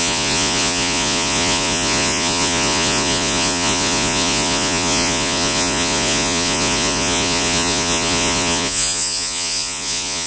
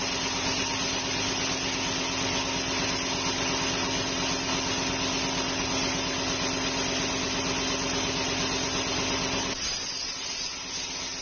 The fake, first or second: first